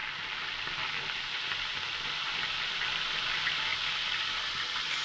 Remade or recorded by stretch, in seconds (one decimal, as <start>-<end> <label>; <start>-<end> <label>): 0.0-5.0 recorded